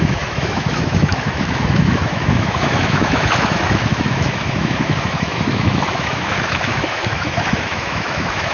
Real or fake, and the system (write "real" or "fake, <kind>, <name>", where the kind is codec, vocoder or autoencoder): fake, autoencoder, DAC-VAE